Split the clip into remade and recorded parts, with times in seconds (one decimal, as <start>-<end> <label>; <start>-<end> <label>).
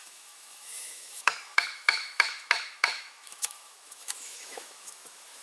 0.0-5.4 remade